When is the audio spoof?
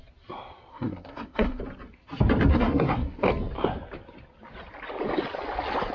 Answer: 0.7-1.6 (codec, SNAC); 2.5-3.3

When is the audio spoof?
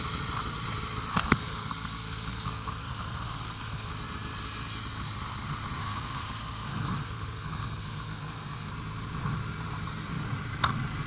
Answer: 1.1-3.9 (codec, SNAC); 5.8-8.7